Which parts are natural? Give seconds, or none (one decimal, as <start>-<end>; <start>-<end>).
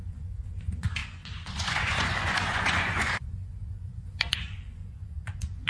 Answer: none